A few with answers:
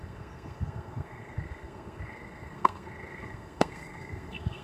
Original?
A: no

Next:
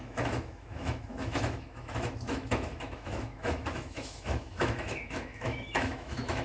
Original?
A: no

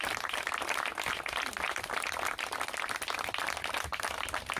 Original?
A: no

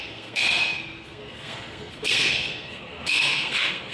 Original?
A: no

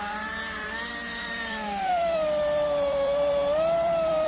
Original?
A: no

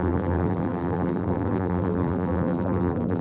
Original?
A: no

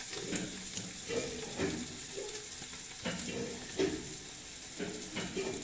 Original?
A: yes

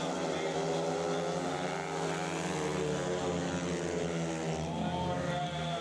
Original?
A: yes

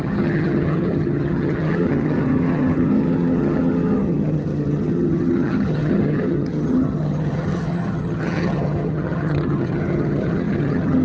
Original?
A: no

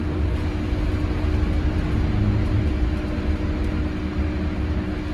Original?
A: yes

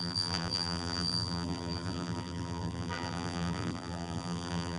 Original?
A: no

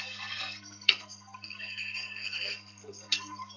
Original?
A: no